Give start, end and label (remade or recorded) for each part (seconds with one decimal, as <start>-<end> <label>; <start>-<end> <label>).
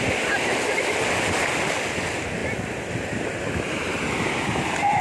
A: 0.0-5.0 recorded